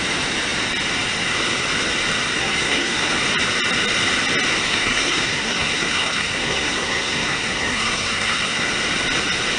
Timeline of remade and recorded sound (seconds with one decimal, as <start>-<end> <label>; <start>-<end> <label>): 0.0-2.4 recorded; 2.4-3.2 remade; 3.2-4.7 recorded; 4.7-8.7 remade; 8.7-9.6 recorded